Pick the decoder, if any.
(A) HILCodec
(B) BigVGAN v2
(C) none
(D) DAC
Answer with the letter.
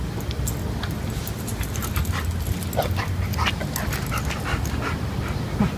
C